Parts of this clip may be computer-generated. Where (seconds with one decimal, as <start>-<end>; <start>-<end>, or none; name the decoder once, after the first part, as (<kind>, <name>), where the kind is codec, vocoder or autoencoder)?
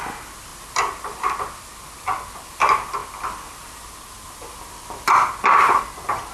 none